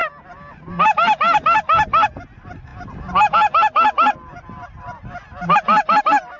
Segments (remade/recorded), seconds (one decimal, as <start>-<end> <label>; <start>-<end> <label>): 0.0-6.4 recorded